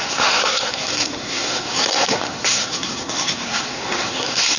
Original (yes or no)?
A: no